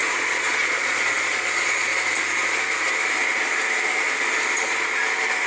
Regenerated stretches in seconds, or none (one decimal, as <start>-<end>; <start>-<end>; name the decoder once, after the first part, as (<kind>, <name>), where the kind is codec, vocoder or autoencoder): 0.0-1.9 (vocoder, Vocos)